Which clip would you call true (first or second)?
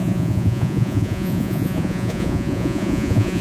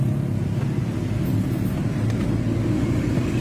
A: second